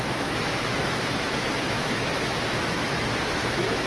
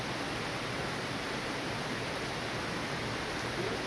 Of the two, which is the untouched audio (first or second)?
second